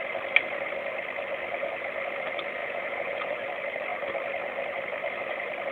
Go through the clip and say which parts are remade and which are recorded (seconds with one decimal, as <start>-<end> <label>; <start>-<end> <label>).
0.0-2.6 recorded; 2.6-3.3 remade; 3.3-5.7 recorded